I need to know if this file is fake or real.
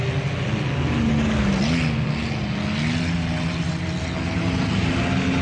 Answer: real